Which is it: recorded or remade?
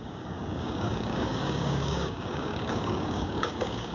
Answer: remade